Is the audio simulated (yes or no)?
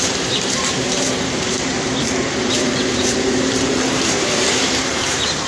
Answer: yes